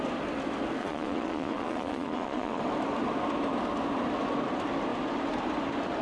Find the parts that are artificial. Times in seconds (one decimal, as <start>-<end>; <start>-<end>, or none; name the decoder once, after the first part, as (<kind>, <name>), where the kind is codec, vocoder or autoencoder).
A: 0.8-2.6 (vocoder, Vocos)